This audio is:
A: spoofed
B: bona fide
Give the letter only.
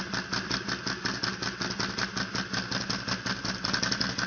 B